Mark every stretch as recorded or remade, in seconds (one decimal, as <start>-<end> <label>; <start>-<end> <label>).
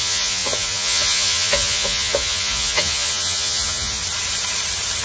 0.0-4.0 remade; 4.0-5.0 recorded